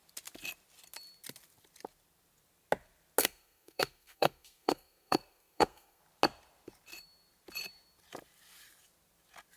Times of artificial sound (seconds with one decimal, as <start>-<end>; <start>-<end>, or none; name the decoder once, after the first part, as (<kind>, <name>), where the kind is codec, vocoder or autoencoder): 3.2-6.0 (codec, SNAC)